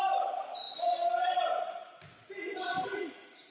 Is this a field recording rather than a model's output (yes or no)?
yes